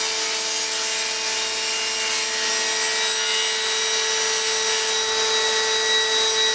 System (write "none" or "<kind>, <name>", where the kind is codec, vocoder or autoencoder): none